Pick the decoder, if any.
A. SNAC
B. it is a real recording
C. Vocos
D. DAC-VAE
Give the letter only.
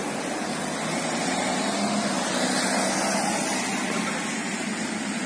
B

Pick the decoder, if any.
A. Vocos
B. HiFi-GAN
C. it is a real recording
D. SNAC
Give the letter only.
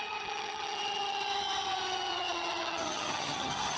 B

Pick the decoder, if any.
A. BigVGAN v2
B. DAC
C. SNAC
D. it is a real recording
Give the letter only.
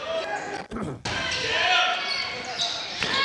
D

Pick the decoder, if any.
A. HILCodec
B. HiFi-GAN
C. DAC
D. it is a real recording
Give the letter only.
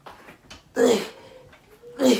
D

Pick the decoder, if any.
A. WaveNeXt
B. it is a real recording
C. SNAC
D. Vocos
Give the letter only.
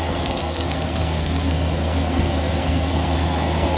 C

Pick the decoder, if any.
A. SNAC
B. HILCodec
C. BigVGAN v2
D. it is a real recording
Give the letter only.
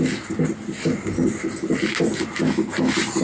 D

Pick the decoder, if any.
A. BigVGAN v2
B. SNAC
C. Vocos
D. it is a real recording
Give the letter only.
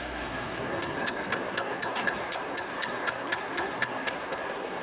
B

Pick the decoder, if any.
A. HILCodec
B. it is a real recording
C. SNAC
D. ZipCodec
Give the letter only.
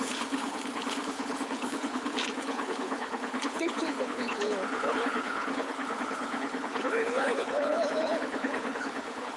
A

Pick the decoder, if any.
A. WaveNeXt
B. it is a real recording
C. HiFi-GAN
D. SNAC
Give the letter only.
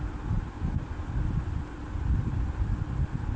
B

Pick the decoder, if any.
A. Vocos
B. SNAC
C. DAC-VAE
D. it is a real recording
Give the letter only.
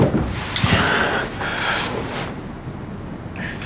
D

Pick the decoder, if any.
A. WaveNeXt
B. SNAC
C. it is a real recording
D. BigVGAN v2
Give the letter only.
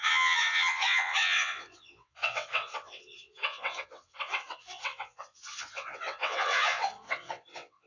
A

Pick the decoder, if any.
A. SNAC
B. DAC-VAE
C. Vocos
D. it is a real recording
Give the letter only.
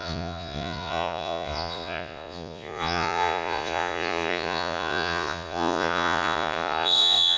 C